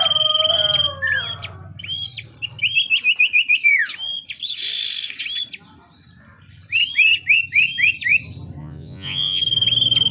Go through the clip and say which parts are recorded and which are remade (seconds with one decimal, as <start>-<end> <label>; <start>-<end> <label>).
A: 0.0-8.6 recorded; 8.6-9.4 remade; 9.4-10.1 recorded